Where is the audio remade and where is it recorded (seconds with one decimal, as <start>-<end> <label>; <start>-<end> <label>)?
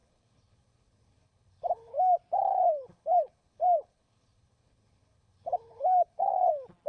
0.0-1.9 remade; 1.9-2.4 recorded; 2.4-6.5 remade; 6.5-6.9 recorded